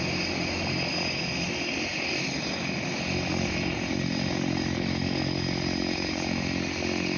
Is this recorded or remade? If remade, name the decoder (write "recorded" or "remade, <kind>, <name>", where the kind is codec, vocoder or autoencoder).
recorded